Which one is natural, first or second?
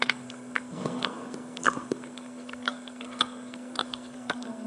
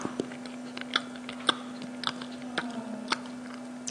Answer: second